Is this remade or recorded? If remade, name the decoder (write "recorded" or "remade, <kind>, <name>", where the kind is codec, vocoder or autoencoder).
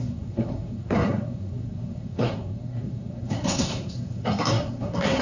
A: remade, codec, SNAC